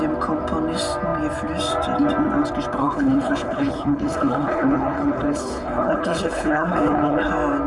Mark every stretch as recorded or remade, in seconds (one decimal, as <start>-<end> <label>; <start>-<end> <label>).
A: 0.0-2.8 recorded; 2.8-7.3 remade; 7.3-7.7 recorded